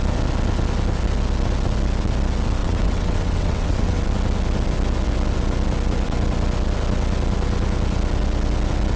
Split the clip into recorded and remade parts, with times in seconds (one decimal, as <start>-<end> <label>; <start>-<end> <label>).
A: 0.0-2.6 recorded; 2.6-4.0 remade; 4.0-9.0 recorded